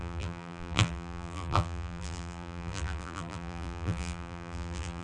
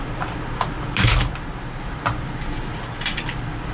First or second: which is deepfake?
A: first